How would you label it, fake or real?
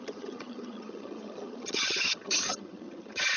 fake